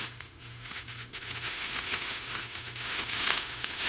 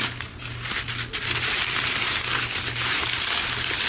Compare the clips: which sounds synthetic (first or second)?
first